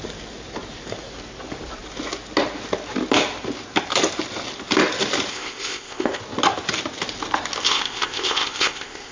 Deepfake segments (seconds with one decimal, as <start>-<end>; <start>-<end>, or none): 5.3-6.2; 7.6-9.1